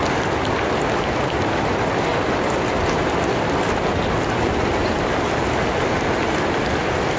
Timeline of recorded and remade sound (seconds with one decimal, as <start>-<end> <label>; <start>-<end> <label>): 0.0-7.2 recorded